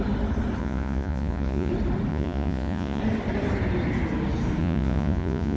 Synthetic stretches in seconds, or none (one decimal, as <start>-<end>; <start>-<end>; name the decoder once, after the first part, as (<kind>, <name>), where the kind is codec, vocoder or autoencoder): 0.6-1.7 (vocoder, Vocos); 2.1-3.0; 4.6-5.6